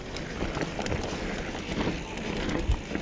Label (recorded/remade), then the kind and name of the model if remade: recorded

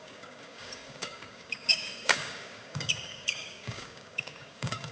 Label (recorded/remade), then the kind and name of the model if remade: remade, codec, DAC